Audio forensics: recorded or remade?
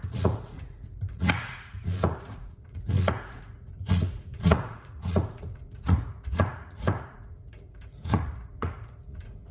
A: remade